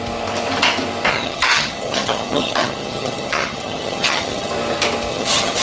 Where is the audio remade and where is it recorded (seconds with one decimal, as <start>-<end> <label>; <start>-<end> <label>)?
0.0-1.1 recorded; 1.1-4.5 remade; 4.5-5.1 recorded; 5.1-5.6 remade